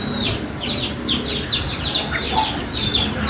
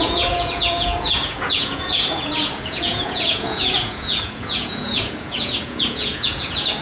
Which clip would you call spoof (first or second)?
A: second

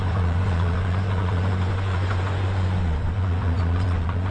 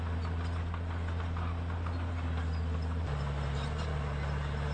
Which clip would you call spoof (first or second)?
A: first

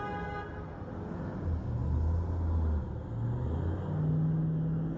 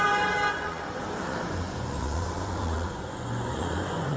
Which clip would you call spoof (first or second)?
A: second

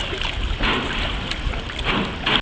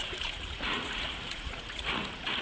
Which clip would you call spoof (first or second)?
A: second